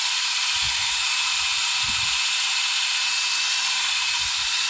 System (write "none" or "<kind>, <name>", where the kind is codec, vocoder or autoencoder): none